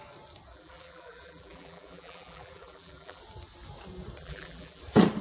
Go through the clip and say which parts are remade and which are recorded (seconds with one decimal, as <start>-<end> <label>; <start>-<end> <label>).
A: 0.0-0.5 recorded; 0.5-3.2 remade; 3.2-4.2 recorded; 4.2-4.8 remade; 4.8-5.2 recorded